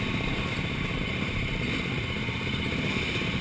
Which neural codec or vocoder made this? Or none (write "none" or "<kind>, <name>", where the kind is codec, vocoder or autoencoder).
none